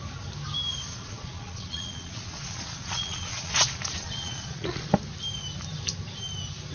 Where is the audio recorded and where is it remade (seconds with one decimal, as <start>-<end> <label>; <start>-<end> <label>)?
0.0-0.9 recorded; 0.9-4.9 remade; 4.9-6.7 recorded